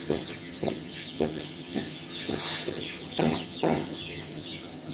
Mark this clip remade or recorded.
remade